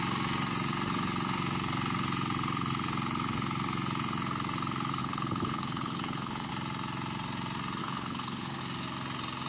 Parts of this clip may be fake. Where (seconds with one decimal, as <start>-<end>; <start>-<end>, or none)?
5.0-6.5; 7.8-8.6